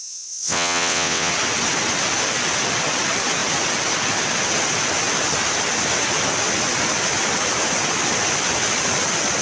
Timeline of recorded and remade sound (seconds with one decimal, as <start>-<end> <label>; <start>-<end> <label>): 0.0-1.3 remade; 1.3-9.4 recorded